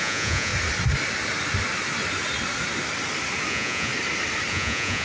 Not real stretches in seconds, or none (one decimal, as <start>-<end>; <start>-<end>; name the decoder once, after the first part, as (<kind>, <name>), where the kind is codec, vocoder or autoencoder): 0.0-0.5 (vocoder, Vocos); 3.5-3.9; 4.5-5.0